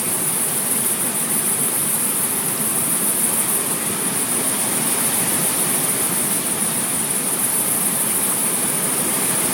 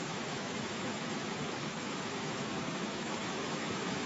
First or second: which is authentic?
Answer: first